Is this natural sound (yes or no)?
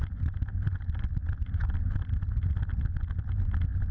yes